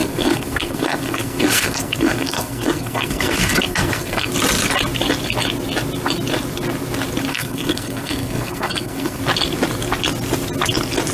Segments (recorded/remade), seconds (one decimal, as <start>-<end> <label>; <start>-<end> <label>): 0.0-4.3 remade; 4.3-7.3 recorded; 7.3-9.2 remade; 9.2-11.1 recorded